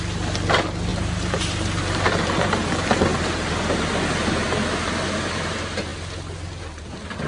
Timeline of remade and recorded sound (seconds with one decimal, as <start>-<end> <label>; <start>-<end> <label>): 0.0-0.9 recorded; 0.9-2.7 remade; 2.7-7.3 recorded